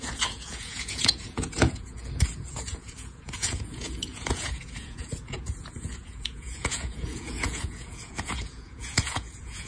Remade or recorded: remade